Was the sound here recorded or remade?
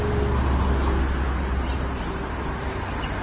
recorded